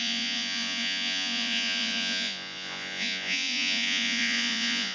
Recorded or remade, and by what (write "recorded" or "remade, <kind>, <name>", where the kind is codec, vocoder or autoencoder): remade, vocoder, Vocos